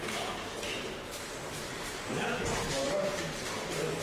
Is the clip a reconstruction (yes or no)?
yes